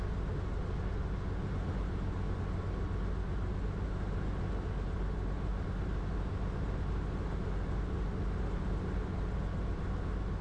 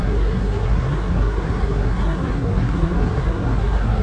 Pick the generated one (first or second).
second